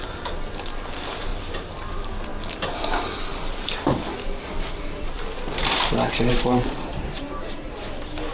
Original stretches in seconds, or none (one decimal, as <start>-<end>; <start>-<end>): 0.0-6.3; 7.9-8.3